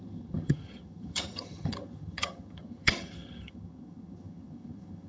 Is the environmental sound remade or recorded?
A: remade